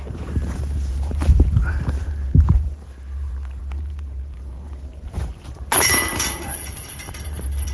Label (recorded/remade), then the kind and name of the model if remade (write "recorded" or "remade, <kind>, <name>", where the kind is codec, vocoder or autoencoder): remade, vocoder, BigVGAN v2